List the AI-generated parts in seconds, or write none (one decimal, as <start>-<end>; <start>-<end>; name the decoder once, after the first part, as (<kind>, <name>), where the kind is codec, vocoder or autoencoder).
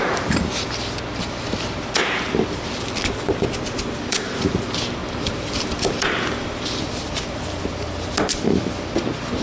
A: 2.0-4.6 (vocoder, BigVGAN v2); 5.0-7.6